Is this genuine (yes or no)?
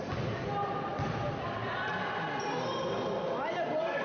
yes